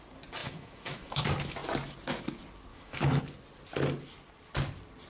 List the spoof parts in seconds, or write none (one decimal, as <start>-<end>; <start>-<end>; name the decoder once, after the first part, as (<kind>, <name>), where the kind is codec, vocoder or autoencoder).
0.4-1.2 (autoencoder, DAC-VAE); 2.7-3.2